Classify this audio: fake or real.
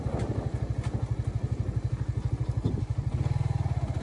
real